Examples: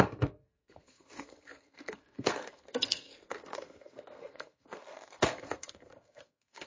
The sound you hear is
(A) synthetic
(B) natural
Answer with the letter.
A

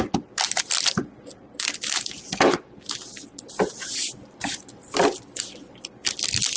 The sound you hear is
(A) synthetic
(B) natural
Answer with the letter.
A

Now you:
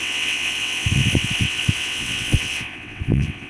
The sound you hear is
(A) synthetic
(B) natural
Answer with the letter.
A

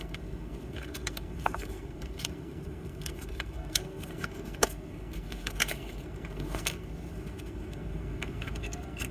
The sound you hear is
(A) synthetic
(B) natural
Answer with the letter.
A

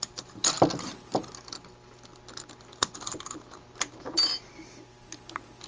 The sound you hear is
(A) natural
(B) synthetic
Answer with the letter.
A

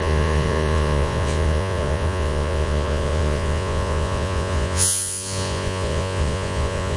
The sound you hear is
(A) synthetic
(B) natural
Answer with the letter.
A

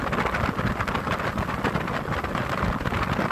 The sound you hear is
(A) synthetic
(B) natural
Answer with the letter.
B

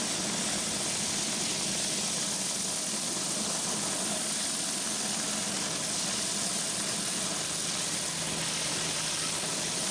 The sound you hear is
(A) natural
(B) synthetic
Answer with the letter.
A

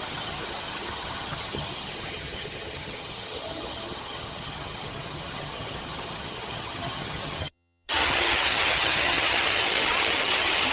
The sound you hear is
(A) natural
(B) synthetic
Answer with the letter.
B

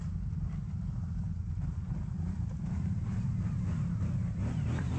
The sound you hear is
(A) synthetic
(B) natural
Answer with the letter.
B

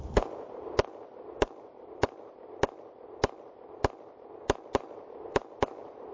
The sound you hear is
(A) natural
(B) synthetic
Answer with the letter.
A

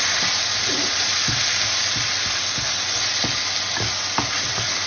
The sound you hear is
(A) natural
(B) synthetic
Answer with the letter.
A